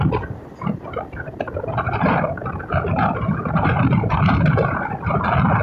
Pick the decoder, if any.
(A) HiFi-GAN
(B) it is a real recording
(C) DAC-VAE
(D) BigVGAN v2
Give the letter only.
D